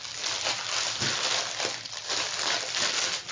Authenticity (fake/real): real